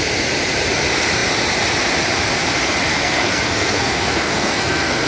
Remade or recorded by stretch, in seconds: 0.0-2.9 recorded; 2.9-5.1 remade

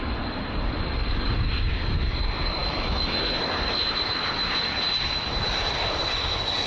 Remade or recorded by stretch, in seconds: 0.0-2.6 recorded; 2.6-3.2 remade; 3.2-6.7 recorded